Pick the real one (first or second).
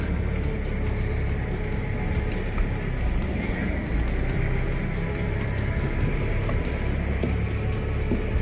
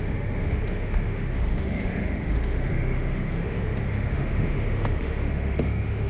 first